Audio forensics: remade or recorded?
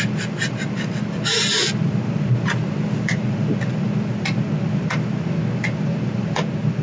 recorded